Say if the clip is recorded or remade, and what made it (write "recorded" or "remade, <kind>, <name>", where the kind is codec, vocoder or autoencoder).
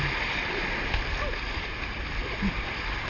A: recorded